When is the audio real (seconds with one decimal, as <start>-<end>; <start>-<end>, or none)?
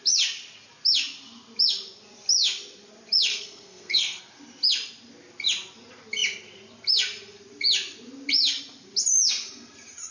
0.0-3.3; 4.2-10.1